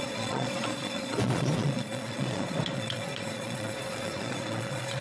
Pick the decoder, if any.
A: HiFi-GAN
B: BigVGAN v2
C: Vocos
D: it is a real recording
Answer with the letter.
C